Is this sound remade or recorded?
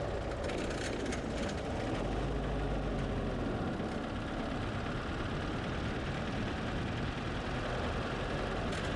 recorded